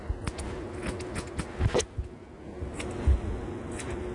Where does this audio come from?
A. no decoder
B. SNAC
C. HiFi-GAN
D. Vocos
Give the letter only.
A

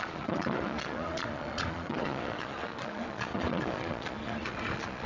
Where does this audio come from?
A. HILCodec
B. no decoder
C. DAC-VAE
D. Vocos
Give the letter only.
D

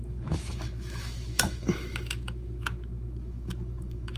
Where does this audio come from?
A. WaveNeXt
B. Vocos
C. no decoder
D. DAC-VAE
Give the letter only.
D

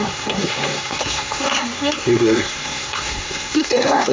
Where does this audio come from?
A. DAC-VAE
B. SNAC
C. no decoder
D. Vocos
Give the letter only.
B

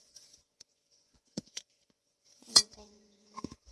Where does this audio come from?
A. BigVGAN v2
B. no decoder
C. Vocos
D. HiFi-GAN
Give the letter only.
C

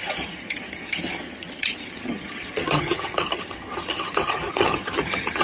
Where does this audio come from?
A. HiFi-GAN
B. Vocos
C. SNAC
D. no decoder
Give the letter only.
A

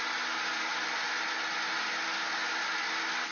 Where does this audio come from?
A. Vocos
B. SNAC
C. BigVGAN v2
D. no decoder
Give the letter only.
D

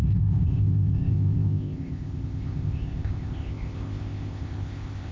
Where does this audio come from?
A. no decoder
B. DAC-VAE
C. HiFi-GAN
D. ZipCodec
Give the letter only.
D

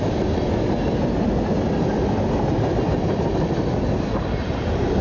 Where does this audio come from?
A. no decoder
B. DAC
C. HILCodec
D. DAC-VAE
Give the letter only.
A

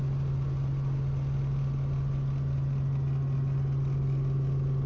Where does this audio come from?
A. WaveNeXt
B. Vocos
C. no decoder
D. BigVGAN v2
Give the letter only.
C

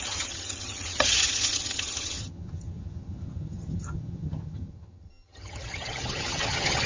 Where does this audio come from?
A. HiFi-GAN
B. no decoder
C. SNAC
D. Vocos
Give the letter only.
A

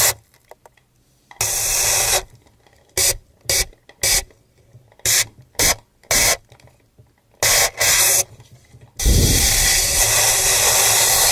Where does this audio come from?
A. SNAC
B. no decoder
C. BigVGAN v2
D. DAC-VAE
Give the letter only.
B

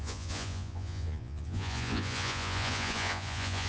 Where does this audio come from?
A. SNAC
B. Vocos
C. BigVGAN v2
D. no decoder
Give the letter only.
B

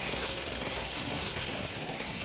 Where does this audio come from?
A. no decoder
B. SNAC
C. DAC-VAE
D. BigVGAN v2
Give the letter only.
B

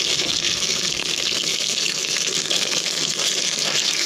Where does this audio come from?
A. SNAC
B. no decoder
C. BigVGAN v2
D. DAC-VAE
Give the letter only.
A